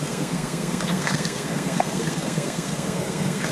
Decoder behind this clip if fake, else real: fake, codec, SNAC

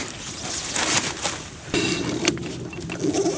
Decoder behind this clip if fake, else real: real